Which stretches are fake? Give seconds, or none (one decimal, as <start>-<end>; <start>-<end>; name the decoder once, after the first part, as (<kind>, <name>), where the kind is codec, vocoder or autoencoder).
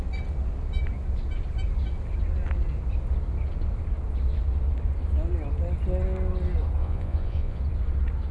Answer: 6.8-7.6 (vocoder, Vocos)